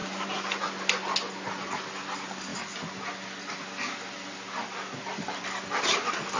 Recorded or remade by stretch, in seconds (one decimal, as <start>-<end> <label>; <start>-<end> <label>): 0.0-0.7 remade; 0.7-6.4 recorded